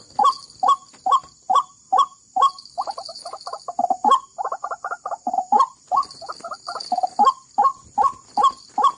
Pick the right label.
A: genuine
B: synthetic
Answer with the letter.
A